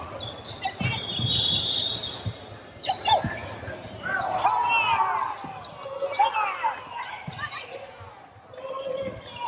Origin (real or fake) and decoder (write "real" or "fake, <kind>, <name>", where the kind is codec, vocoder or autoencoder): real